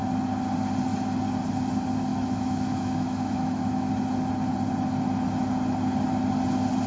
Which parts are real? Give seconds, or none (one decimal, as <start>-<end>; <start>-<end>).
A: 0.0-2.1; 3.9-6.9